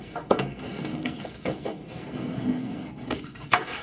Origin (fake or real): fake